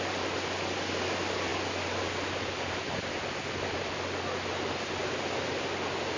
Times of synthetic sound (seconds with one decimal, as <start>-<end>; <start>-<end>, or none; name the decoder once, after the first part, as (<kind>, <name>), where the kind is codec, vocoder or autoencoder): none